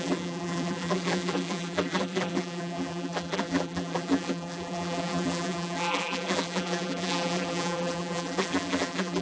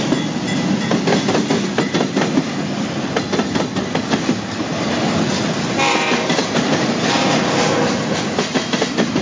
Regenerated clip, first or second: first